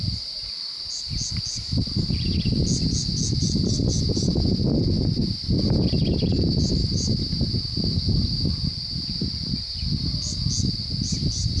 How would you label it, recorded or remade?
recorded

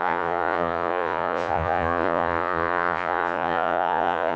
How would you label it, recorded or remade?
remade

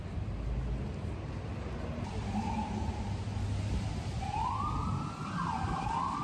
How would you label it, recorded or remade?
recorded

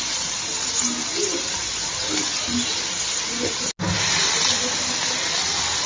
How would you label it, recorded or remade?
recorded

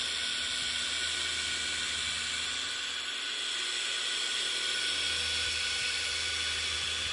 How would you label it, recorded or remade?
recorded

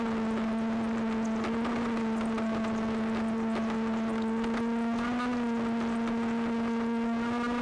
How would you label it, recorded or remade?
recorded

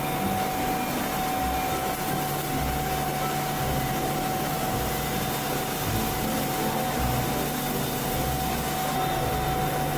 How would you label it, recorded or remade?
recorded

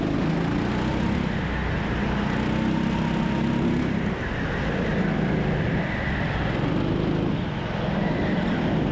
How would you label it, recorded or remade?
recorded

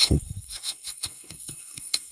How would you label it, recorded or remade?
remade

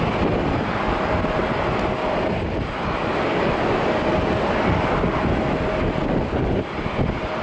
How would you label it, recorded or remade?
recorded